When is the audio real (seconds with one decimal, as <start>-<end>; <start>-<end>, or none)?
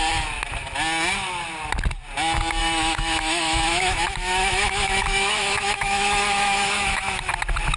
0.0-2.6; 7.3-7.8